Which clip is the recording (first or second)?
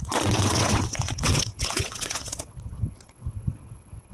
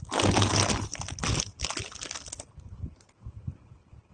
second